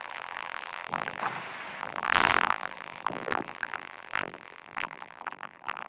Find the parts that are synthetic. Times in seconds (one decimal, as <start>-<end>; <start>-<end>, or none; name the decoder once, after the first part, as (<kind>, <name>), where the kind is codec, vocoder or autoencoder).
0.0-1.2 (vocoder, BigVGAN v2); 1.8-5.9